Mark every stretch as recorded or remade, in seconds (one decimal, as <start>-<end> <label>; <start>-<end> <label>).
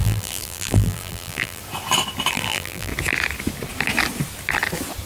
0.0-1.6 remade; 1.6-2.3 recorded; 2.3-2.9 remade; 2.9-5.1 recorded